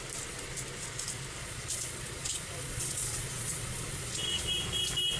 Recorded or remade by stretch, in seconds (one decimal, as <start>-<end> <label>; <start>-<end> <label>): 0.0-1.4 recorded; 1.4-4.5 remade; 4.5-5.2 recorded